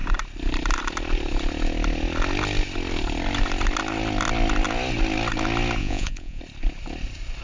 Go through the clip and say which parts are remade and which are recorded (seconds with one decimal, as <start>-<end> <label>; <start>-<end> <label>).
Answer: 0.0-5.8 recorded; 5.8-6.4 remade; 6.4-7.4 recorded